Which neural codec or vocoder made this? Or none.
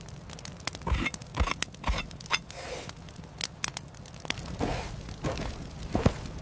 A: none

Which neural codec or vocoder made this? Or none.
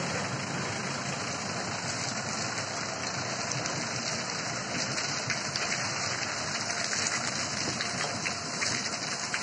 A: none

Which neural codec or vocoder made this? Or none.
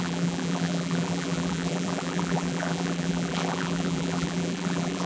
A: vocoder, BigVGAN v2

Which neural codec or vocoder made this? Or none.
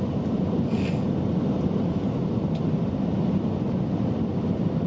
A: none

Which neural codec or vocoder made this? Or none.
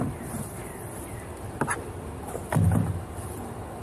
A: none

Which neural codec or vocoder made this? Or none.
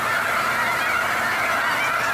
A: none